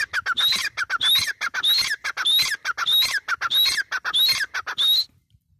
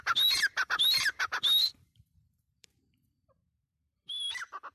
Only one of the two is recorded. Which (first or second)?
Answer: first